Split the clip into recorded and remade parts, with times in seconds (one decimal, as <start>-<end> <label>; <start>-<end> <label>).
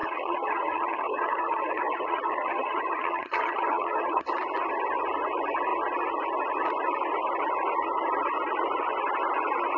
0.0-4.2 remade; 4.2-9.8 recorded